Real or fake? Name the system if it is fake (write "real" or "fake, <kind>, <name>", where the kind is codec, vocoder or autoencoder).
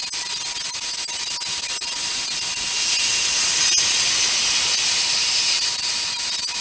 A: real